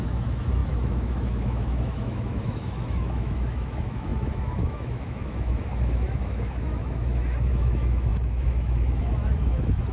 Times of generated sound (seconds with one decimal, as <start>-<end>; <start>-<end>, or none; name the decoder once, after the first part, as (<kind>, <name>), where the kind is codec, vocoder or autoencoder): 0.0-9.9 (autoencoder, DAC-VAE)